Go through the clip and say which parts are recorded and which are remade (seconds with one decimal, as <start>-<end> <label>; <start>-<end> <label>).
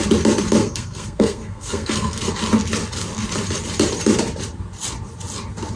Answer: 0.0-0.6 recorded; 0.6-2.3 remade; 2.3-5.8 recorded